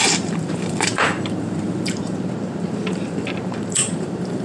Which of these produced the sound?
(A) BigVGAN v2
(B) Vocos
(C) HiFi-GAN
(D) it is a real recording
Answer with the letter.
A